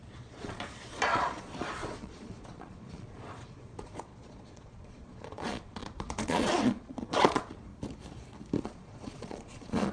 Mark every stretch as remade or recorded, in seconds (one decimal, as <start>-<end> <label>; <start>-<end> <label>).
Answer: 0.0-7.7 remade; 7.7-8.6 recorded; 8.6-9.9 remade